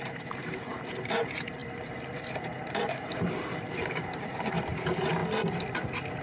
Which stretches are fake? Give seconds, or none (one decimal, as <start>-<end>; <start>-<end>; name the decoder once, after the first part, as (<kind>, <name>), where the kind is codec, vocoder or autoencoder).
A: 0.0-5.2 (vocoder, BigVGAN v2)

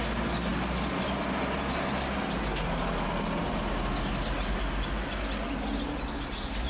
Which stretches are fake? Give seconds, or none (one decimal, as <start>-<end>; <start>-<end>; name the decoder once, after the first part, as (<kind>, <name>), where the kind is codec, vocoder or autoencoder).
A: none

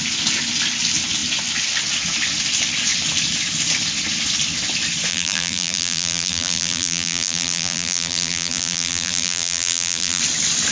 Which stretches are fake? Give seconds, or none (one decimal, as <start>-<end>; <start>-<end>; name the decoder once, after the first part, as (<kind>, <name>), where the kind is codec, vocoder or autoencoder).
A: 5.1-10.2 (vocoder, BigVGAN v2)

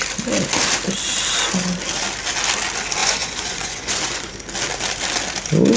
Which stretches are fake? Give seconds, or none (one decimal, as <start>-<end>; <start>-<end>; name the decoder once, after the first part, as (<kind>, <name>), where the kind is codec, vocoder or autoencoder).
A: 3.0-4.3 (vocoder, Vocos)